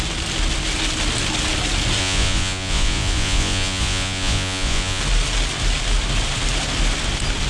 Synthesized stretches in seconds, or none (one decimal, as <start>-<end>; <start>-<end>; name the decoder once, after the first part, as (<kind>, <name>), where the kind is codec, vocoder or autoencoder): 2.0-5.0 (vocoder, Vocos)